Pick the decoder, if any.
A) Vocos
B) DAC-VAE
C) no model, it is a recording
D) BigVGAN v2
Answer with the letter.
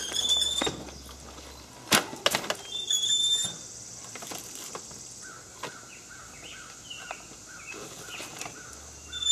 C